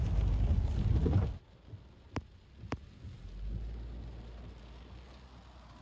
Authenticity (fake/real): real